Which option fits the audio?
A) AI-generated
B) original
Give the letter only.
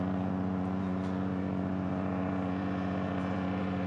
A